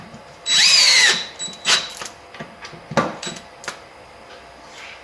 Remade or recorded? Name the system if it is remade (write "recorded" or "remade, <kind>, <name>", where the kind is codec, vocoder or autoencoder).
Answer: recorded